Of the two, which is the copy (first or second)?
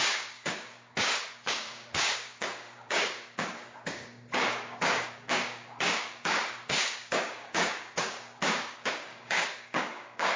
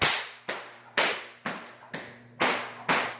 first